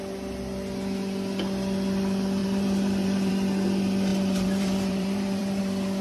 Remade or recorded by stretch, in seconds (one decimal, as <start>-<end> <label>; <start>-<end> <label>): 0.0-2.4 recorded; 2.4-3.3 remade; 3.3-4.1 recorded; 4.1-5.6 remade; 5.6-6.0 recorded